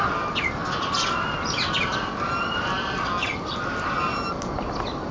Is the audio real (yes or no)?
yes